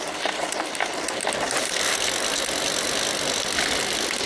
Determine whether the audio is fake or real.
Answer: real